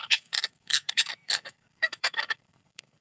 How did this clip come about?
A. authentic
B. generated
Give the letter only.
B